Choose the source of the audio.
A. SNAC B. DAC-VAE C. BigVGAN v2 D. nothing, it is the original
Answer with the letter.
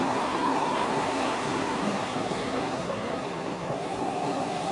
A